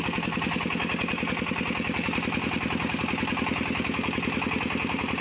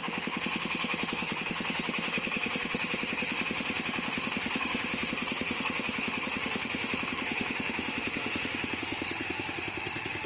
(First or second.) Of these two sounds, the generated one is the second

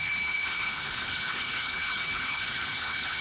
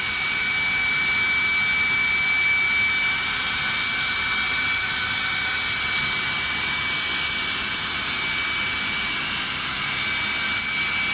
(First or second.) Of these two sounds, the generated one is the first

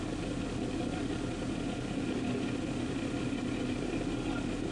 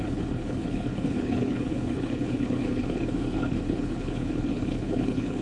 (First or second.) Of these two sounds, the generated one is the second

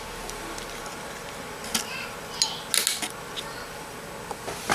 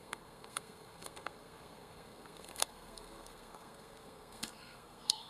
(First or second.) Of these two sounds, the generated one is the second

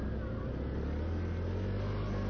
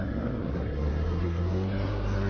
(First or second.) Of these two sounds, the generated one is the second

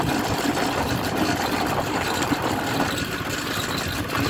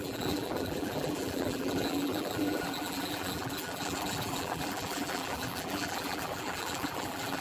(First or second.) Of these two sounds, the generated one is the second